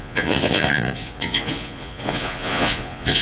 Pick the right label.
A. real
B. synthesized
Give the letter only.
B